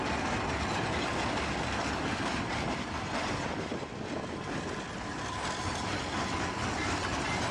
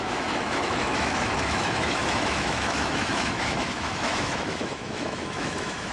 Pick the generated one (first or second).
second